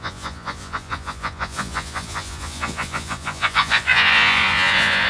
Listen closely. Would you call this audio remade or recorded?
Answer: remade